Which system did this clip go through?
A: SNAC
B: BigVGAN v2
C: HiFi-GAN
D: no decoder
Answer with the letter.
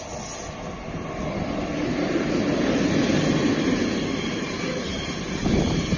D